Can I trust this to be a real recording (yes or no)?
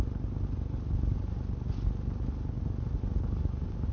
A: yes